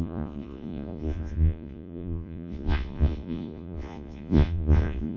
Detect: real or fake fake